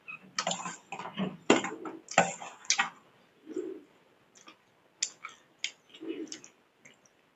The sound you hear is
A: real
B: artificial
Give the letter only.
A